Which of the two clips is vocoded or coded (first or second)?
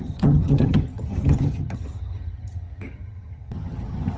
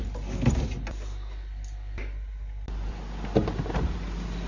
first